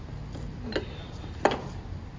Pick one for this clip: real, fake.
real